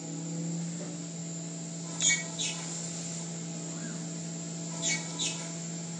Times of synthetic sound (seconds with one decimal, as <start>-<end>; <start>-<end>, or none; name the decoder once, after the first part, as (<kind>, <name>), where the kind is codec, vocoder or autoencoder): none